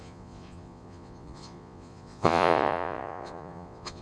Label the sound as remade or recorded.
remade